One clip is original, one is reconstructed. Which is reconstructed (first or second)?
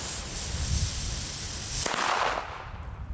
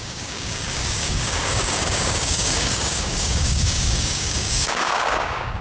second